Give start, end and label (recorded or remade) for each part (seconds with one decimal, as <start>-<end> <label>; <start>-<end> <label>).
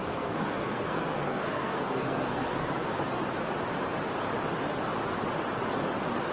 0.0-3.2 remade; 3.2-6.3 recorded